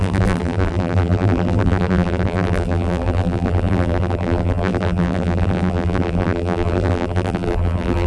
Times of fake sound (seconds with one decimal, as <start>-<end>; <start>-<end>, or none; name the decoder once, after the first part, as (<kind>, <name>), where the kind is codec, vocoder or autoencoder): 0.0-8.1 (vocoder, BigVGAN v2)